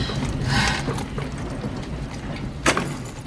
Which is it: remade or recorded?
recorded